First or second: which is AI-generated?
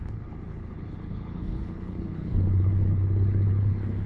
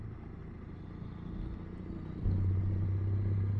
first